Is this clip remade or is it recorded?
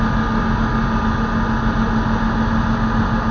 recorded